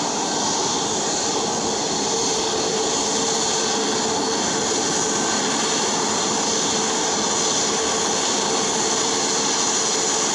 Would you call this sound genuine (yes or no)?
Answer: yes